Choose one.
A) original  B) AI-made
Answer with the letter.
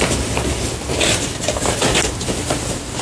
A